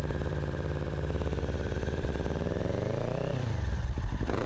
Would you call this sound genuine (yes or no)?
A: no